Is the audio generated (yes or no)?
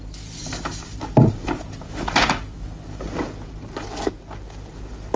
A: no